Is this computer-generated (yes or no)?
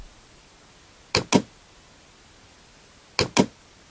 no